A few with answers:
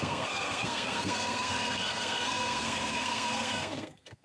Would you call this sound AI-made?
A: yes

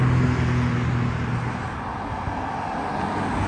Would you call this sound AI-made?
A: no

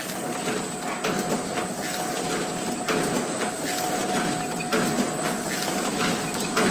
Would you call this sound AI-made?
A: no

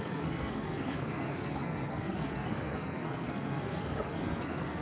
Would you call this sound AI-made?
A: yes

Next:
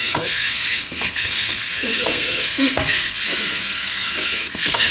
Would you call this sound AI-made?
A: yes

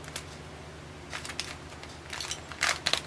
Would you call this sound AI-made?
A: no